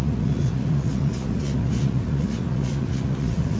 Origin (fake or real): fake